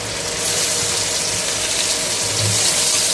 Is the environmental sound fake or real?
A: real